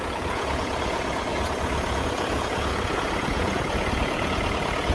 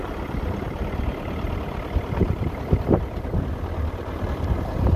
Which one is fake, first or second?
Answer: first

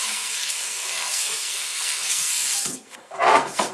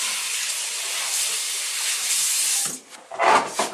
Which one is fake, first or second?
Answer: first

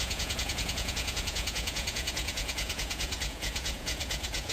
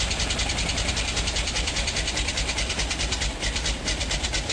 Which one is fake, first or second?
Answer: first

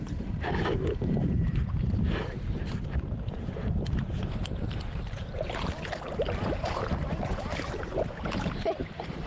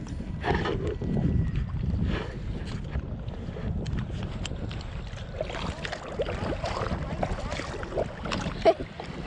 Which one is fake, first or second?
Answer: first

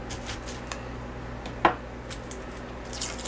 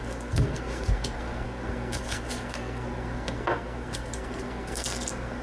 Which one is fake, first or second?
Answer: second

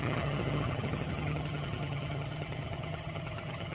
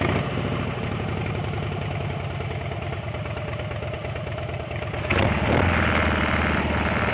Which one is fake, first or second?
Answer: first